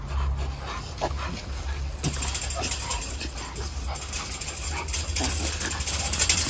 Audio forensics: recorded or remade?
recorded